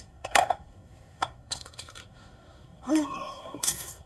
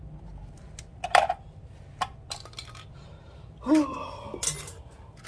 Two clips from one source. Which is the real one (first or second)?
second